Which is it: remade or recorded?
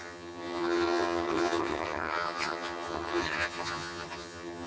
remade